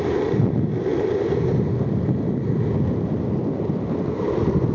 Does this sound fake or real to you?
real